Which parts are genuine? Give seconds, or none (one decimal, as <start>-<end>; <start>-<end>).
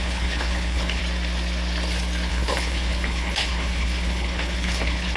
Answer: 1.0-2.3